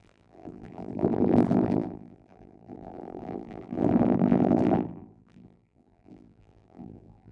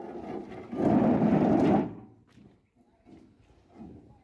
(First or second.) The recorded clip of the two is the second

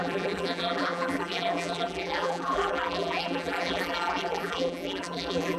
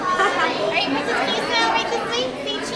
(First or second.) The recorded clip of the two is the second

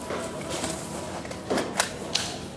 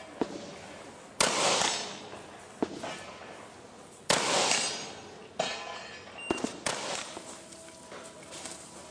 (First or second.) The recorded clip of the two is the second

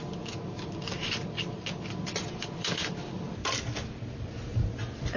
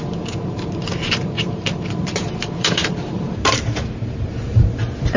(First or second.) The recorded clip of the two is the first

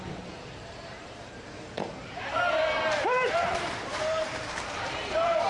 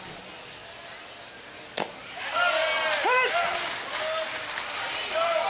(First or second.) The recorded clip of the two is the second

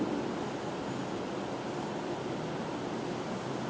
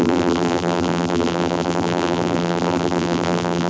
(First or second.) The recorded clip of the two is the first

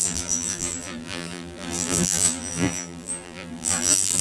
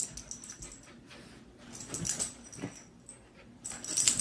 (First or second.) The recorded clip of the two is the second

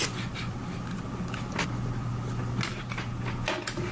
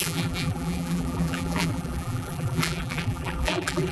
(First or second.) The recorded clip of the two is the first